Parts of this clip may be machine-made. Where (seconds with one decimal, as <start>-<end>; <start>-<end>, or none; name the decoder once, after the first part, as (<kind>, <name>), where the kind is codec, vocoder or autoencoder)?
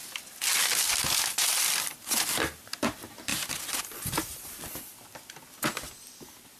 none